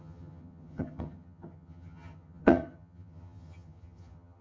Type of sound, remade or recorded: remade